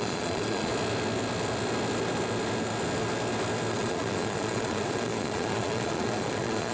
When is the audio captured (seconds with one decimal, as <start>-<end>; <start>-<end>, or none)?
0.7-3.7